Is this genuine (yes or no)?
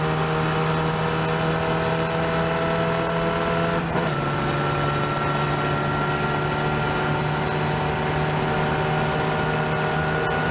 yes